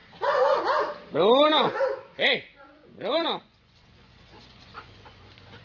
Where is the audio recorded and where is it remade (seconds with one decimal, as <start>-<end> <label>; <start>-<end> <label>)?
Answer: 0.0-0.6 remade; 0.6-2.1 recorded; 2.1-5.6 remade